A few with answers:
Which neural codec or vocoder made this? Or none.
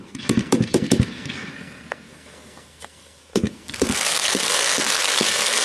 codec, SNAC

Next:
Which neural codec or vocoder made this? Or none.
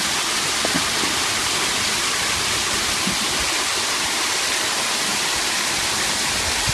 none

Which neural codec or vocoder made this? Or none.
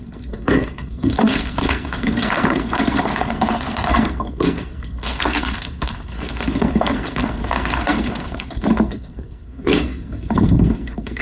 codec, SNAC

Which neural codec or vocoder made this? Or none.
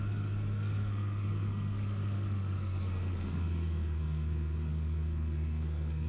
codec, SNAC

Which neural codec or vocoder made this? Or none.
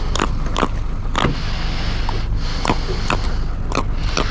none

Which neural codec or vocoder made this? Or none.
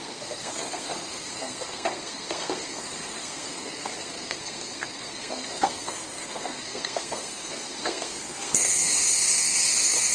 codec, SNAC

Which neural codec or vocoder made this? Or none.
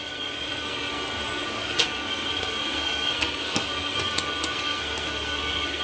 codec, SNAC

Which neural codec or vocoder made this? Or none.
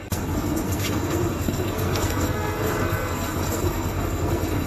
codec, SNAC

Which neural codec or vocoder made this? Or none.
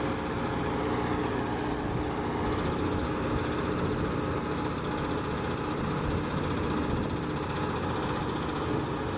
none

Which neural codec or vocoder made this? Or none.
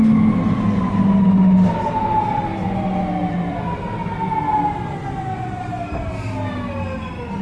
none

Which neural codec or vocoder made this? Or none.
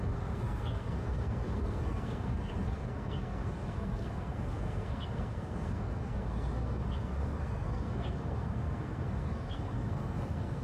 codec, SNAC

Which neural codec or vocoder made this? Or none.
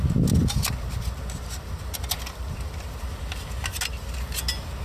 none